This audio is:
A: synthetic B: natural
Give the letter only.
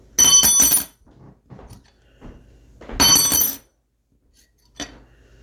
B